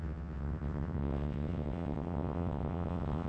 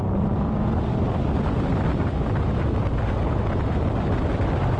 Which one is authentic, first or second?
second